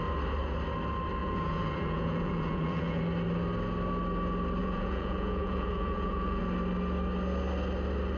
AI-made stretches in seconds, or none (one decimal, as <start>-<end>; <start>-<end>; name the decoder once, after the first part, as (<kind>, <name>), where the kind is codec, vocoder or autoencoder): 1.2-3.0 (vocoder, Vocos); 4.6-6.4